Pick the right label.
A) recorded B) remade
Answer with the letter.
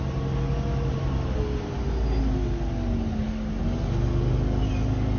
A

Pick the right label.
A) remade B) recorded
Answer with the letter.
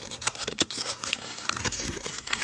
A